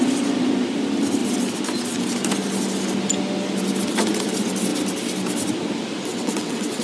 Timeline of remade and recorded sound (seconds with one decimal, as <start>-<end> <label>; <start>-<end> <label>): 0.0-6.1 recorded; 6.1-6.8 remade